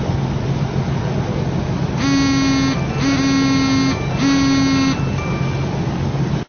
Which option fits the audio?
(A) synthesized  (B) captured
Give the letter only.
B